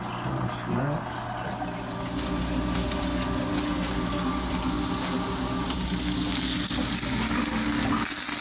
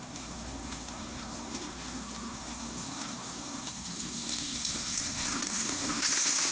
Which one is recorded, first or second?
first